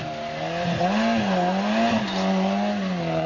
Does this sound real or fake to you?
real